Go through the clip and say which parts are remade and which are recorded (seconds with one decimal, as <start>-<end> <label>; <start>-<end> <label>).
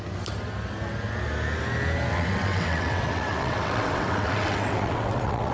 0.0-2.1 recorded; 2.1-5.5 remade